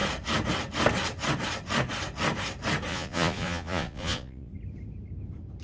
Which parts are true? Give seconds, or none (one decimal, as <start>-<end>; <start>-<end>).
0.0-2.9; 4.5-5.6